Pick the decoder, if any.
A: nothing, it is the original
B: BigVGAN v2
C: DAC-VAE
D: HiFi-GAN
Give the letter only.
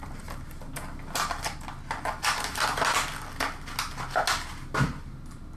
A